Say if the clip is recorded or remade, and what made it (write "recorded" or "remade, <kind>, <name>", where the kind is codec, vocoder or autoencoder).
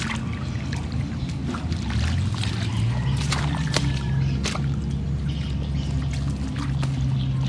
recorded